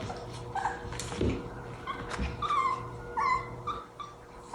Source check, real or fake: real